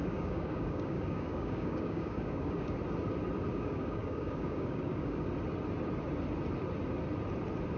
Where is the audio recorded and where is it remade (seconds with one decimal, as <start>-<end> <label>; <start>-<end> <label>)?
0.0-2.7 remade; 2.7-3.5 recorded; 3.5-5.3 remade; 5.3-7.8 recorded

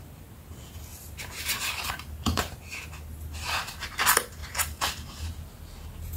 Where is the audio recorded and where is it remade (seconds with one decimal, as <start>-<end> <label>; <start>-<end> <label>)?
0.0-0.9 recorded; 0.9-2.6 remade; 2.6-4.4 recorded; 4.4-4.9 remade; 4.9-6.2 recorded

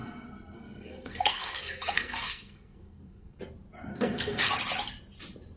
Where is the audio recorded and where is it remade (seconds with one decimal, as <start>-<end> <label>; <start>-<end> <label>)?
0.0-3.4 remade; 3.4-3.9 recorded; 3.9-4.5 remade; 4.5-5.6 recorded

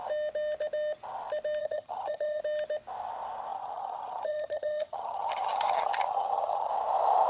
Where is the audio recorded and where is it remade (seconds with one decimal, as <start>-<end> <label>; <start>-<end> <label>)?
0.0-1.6 recorded; 1.6-2.4 remade; 2.4-3.5 recorded; 3.5-6.7 remade; 6.7-7.3 recorded